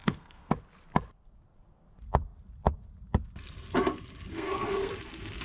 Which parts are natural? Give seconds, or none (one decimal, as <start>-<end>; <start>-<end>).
0.5-4.3; 4.9-5.4